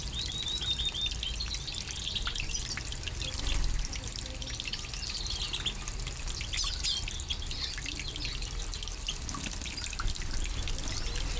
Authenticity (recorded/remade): recorded